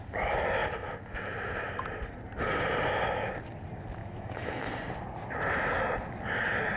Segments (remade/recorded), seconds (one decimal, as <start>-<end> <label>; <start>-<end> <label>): 0.0-4.0 recorded; 4.0-4.7 remade; 4.7-6.8 recorded